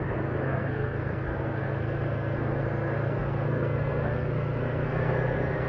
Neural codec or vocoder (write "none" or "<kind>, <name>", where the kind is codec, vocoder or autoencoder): codec, SNAC